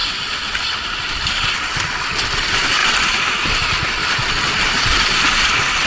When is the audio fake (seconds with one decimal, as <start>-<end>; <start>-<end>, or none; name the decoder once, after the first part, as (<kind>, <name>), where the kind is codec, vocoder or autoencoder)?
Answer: none